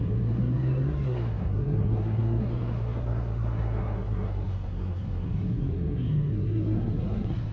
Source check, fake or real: fake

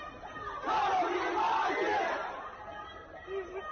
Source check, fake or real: real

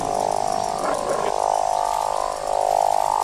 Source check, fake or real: real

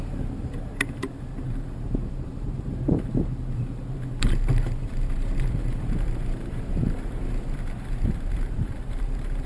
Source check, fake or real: fake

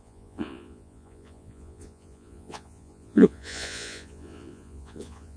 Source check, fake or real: fake